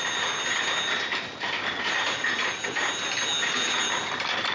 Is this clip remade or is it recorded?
recorded